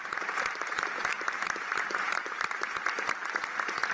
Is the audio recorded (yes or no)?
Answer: no